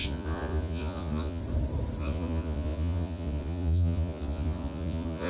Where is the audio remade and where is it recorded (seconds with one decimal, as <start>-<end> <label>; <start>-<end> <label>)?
0.0-1.4 remade; 1.4-2.0 recorded; 2.0-5.3 remade